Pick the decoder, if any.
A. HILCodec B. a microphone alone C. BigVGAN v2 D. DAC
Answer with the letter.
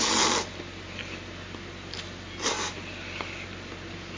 B